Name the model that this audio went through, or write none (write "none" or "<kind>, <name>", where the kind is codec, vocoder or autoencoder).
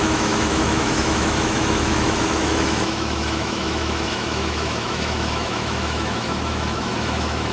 autoencoder, DAC-VAE